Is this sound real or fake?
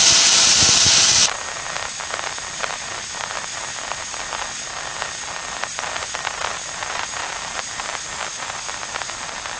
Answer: real